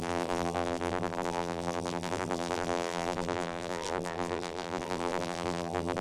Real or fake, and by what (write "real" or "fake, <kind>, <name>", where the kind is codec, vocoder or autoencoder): fake, vocoder, BigVGAN v2